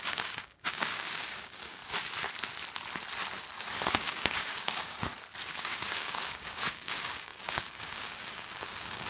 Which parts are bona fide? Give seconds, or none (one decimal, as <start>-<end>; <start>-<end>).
1.8-3.9; 5.1-5.6